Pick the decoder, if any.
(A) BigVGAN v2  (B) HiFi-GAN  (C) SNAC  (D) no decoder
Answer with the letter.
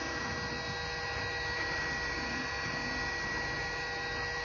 D